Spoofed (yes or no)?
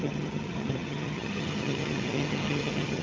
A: yes